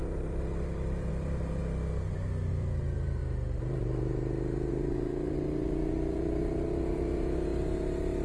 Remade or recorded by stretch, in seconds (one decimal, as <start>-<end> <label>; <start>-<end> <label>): 0.0-1.6 remade; 1.6-2.5 recorded; 2.5-3.2 remade; 3.2-4.7 recorded; 4.7-8.2 remade